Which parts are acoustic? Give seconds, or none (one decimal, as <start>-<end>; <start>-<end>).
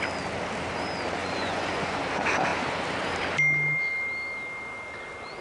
0.0-1.2; 2.0-5.4